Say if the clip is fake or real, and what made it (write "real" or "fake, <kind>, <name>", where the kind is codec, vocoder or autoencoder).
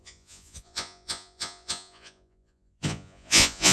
fake, vocoder, Vocos